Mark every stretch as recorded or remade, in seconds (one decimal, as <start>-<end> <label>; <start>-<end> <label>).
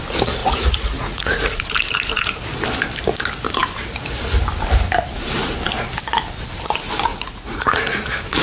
0.0-0.4 recorded; 0.4-1.6 remade; 1.6-7.1 recorded; 7.1-7.9 remade; 7.9-8.4 recorded